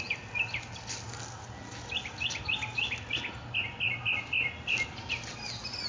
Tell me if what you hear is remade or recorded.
recorded